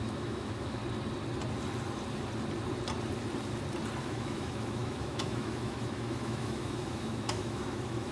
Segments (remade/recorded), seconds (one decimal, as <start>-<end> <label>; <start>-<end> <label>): 0.0-0.8 remade; 0.8-4.0 recorded; 4.0-8.1 remade